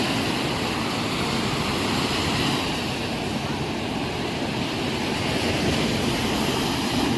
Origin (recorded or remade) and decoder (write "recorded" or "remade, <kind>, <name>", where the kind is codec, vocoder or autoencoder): recorded